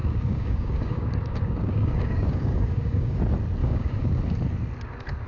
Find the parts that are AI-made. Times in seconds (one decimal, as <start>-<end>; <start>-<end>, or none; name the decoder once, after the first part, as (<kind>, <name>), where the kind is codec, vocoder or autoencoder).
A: 0.0-3.2 (codec, DAC); 3.6-4.2